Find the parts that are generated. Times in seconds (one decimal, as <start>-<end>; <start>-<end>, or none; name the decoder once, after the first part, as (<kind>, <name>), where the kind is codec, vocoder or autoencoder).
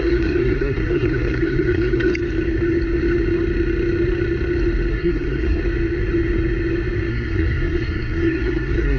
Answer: 0.0-2.1 (codec, SNAC); 4.9-5.6; 7.1-9.0